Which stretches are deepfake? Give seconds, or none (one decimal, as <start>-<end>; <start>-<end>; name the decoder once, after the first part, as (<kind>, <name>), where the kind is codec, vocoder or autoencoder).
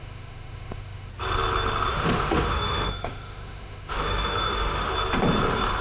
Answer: 0.0-1.1 (autoencoder, DAC-VAE); 1.9-4.9